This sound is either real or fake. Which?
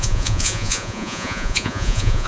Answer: fake